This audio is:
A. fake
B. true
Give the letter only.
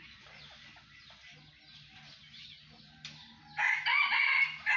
B